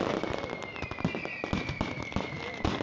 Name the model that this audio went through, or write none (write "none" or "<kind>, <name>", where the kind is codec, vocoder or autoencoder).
none